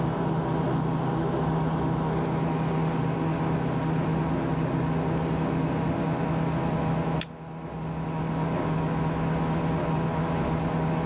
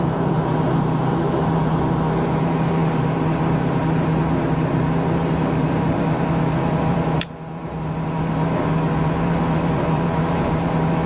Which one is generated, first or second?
second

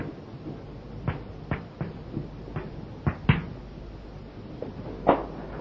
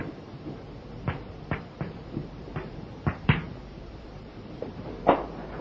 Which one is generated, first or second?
second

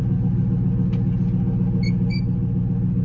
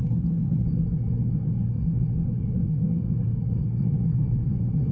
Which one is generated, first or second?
second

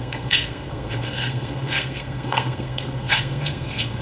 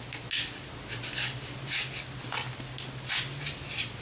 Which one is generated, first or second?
first